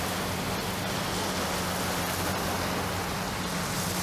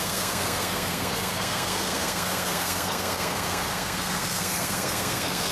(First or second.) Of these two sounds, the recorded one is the first